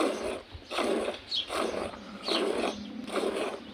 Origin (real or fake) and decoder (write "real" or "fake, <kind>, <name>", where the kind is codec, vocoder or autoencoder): real